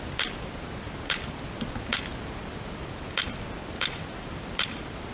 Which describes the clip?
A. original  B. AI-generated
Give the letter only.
A